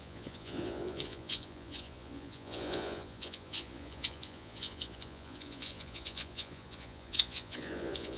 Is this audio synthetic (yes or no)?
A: yes